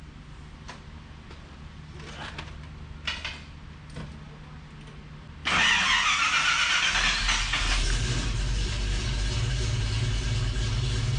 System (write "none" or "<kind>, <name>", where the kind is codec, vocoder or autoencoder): none